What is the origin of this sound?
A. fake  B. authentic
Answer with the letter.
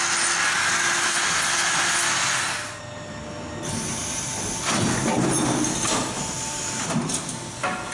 B